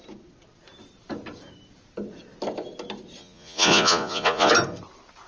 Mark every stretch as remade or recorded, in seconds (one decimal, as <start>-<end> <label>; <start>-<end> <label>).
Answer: 0.0-3.2 recorded; 3.2-4.5 remade; 4.5-5.3 recorded